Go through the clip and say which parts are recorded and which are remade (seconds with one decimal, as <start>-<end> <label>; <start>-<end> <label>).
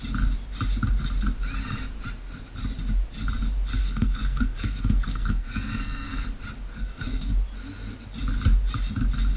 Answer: 0.0-3.8 recorded; 3.8-6.3 remade; 6.3-6.7 recorded; 6.7-7.3 remade; 7.3-9.4 recorded